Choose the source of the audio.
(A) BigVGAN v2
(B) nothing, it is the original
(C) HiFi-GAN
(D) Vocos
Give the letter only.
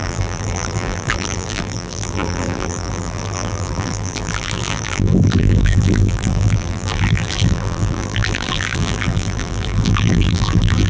A